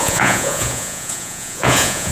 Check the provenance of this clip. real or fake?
fake